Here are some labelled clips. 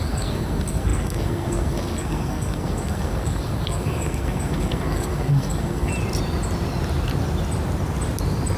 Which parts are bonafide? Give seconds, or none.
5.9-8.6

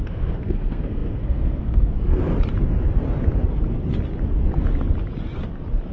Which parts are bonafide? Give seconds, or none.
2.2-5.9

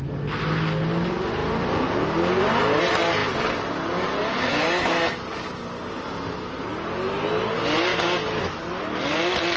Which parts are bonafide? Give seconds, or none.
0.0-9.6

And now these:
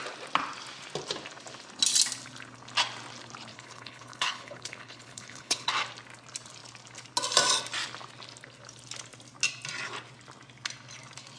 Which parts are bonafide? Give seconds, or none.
0.0-3.5; 5.7-11.4

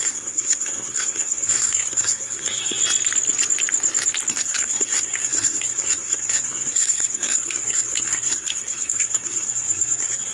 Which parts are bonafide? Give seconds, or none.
2.8-4.3

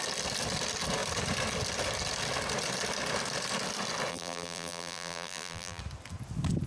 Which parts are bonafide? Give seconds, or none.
0.0-4.1; 5.8-6.7